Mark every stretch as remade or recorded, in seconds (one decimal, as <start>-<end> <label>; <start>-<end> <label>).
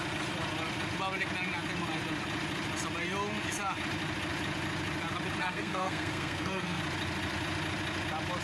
0.0-5.4 recorded; 5.4-6.8 remade; 6.8-8.4 recorded